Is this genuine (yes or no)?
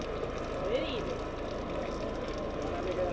yes